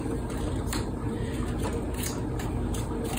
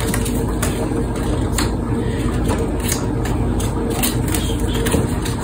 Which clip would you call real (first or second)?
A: second